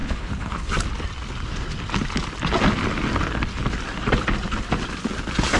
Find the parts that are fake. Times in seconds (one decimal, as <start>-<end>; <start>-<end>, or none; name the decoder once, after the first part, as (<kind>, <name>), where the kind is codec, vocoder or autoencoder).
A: 0.0-0.7 (codec, HILCodec)